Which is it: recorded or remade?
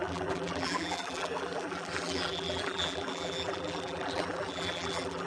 remade